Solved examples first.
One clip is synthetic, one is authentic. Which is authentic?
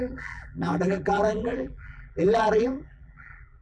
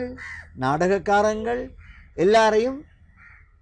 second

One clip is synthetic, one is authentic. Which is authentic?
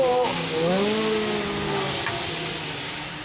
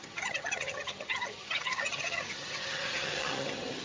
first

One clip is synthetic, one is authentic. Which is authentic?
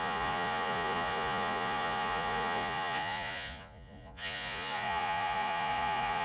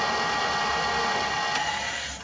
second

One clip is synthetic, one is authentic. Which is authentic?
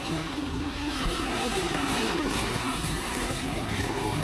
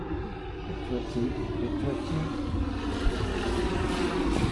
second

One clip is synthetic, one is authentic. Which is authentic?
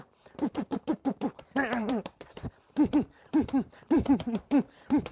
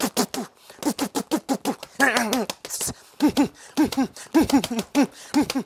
second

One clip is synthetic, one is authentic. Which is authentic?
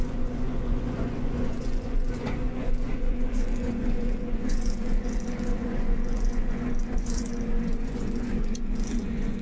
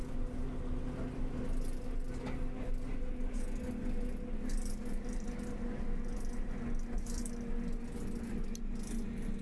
second